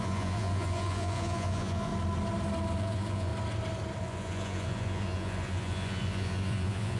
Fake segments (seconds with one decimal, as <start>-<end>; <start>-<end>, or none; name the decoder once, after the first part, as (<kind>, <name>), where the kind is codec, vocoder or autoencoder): 0.0-1.9 (vocoder, Vocos); 2.8-3.3; 4.0-7.0